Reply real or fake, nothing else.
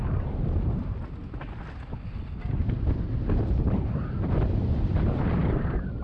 real